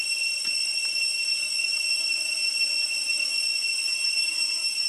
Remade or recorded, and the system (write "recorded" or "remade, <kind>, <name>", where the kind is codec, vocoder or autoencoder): recorded